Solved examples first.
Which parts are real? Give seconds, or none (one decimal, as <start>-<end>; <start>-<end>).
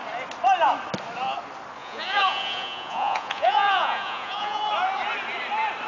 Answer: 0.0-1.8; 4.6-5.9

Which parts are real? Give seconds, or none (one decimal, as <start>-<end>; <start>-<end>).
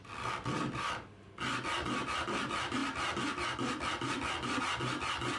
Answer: 0.0-5.4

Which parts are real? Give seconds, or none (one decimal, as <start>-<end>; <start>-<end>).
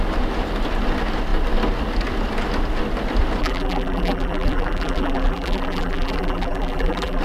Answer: 0.0-3.4